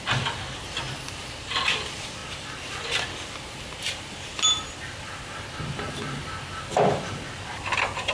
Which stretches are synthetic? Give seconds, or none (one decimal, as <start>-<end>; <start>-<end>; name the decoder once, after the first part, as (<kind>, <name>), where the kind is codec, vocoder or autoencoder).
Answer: none